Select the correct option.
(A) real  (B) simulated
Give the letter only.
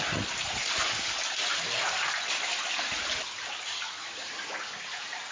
A